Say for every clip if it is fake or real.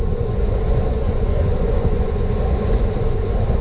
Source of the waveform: fake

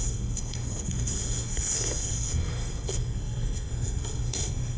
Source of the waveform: fake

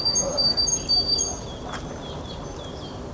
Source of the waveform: real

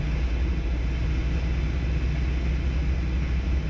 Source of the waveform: real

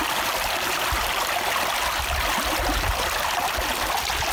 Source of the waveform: real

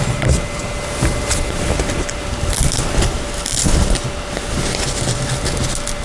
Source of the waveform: real